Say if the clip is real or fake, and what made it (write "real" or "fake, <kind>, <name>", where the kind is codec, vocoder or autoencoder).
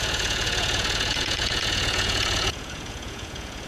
fake, vocoder, Vocos